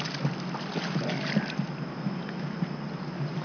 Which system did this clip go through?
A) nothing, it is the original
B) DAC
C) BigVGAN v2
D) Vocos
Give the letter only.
A